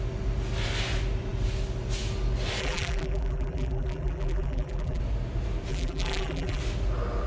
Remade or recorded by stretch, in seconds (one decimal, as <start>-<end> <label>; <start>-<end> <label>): 0.0-2.6 recorded; 2.6-5.0 remade; 5.0-5.7 recorded; 5.7-6.6 remade; 6.6-7.3 recorded